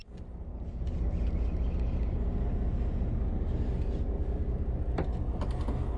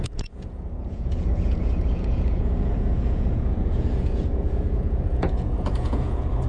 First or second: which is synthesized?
second